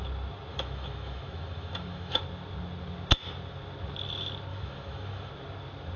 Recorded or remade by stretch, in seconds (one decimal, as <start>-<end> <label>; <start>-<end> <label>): 0.0-0.5 recorded; 0.5-2.2 remade; 2.2-4.5 recorded; 4.5-5.3 remade; 5.3-6.0 recorded